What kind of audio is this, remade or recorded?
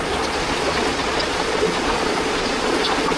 remade